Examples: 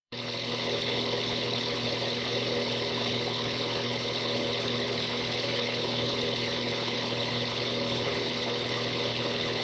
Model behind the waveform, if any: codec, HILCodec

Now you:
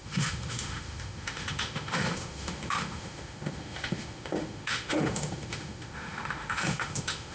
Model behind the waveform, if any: autoencoder, DAC-VAE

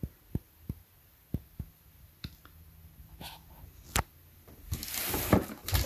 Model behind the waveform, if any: none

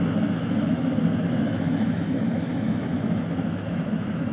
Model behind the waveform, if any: autoencoder, DAC-VAE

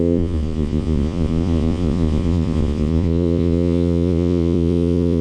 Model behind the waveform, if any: vocoder, Vocos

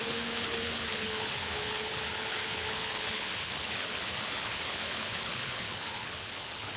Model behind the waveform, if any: codec, HILCodec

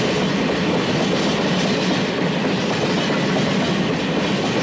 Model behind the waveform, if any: none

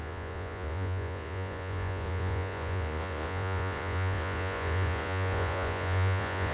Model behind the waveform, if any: vocoder, Vocos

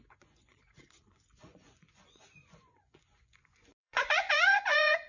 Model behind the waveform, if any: vocoder, Vocos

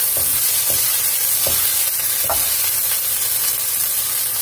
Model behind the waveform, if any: none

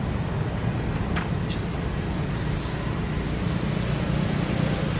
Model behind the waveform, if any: none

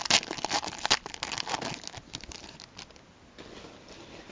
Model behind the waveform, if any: none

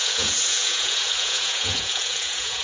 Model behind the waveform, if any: vocoder, Vocos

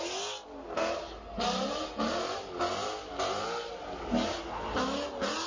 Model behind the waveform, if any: none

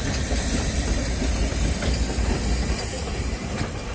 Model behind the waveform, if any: none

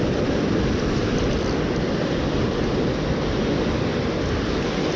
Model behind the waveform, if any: none